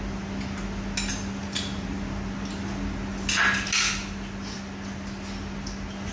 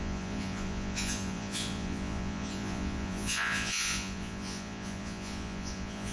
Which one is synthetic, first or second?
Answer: second